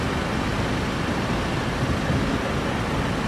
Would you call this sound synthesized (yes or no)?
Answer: no